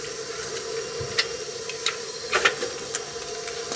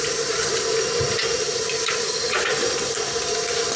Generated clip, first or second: second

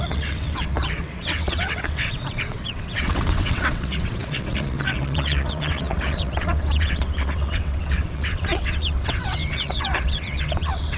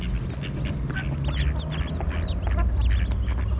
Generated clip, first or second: first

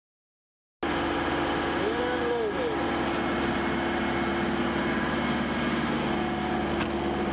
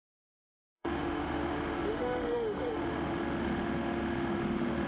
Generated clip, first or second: second